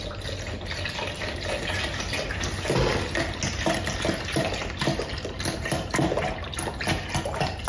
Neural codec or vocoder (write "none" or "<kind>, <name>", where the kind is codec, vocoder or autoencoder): none